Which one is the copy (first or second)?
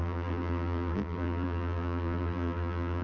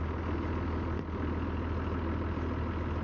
first